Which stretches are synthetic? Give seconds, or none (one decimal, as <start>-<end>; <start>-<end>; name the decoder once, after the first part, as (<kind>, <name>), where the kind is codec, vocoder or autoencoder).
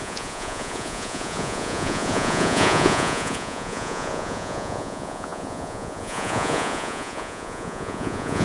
0.0-8.4 (vocoder, Vocos)